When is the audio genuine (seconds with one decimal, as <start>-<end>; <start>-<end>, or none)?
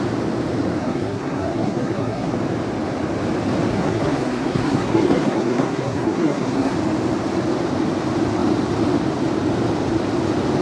0.0-0.8; 2.3-3.7; 6.7-10.6